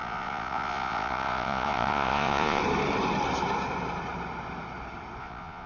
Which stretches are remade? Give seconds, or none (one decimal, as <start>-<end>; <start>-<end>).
0.0-2.6; 5.2-5.7